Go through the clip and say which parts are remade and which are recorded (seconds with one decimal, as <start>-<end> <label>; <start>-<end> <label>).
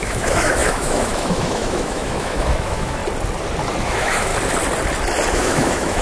0.0-3.0 remade; 3.0-3.8 recorded; 3.8-4.3 remade; 4.3-5.3 recorded; 5.3-6.0 remade